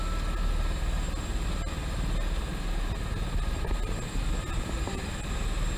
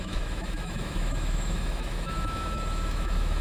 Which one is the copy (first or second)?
second